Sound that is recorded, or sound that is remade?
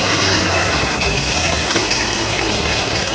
remade